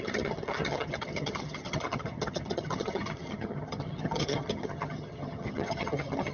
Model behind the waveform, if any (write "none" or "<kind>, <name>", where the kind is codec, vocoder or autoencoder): vocoder, HiFi-GAN